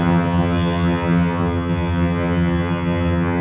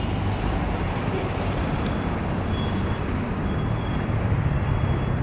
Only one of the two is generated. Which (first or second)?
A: first